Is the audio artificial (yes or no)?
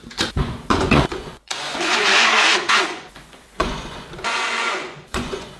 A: yes